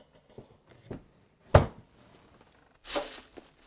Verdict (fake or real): real